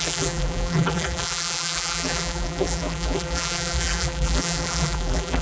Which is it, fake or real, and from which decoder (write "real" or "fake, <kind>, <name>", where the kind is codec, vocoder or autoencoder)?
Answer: fake, vocoder, BigVGAN v2